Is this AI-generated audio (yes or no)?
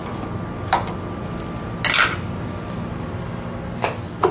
no